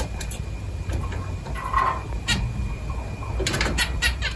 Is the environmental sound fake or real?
real